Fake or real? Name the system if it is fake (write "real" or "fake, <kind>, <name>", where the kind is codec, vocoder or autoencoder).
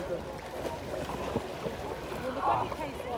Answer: real